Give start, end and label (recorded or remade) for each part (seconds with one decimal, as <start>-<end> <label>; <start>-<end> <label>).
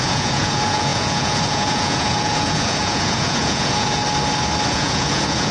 0.0-4.0 remade; 4.0-4.7 recorded; 4.7-5.5 remade